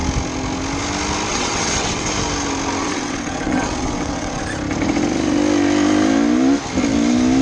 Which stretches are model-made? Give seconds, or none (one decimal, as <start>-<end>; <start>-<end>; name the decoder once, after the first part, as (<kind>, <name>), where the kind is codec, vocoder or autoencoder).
1.3-2.1 (vocoder, WaveNeXt); 2.8-4.4